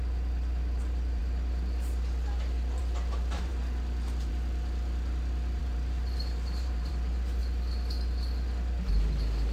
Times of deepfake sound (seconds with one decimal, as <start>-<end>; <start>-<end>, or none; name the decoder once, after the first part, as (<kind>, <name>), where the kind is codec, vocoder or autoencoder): 5.6-6.9 (vocoder, BigVGAN v2)